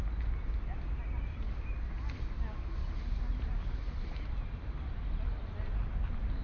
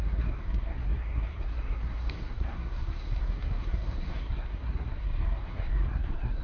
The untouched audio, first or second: first